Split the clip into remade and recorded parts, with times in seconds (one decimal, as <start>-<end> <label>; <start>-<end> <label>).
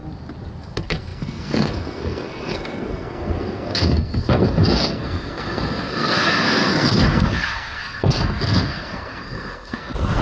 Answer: 0.0-0.6 recorded; 0.6-10.2 remade